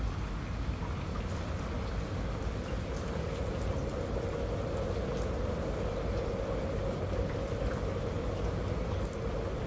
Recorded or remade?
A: recorded